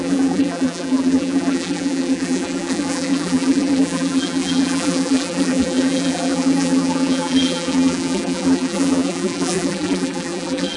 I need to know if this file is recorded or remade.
remade